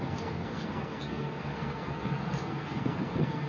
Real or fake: fake